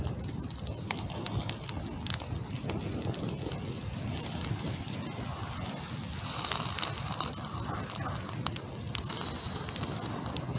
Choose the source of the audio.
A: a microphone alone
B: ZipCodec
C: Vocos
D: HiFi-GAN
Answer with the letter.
A